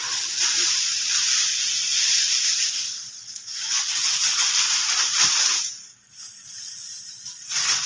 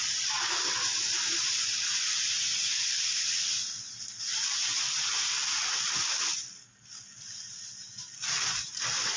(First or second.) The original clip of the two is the second